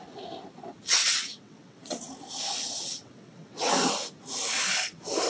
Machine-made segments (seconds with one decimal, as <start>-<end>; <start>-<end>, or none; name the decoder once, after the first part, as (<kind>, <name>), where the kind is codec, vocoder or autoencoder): 1.0-2.0 (vocoder, WaveNeXt); 2.6-3.7